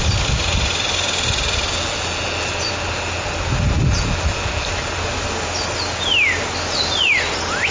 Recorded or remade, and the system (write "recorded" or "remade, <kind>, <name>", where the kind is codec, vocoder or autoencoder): recorded